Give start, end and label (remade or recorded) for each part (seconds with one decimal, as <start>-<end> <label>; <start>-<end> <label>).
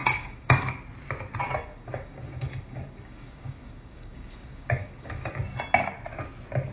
0.0-0.6 remade; 0.6-1.7 recorded; 1.7-5.6 remade; 5.6-6.7 recorded